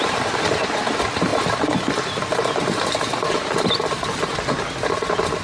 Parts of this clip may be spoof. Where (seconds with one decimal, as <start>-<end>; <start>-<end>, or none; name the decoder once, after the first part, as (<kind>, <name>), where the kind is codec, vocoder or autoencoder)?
none